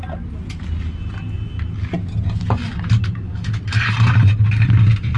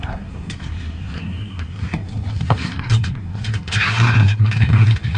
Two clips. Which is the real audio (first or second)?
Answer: first